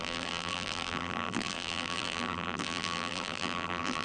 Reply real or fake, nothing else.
fake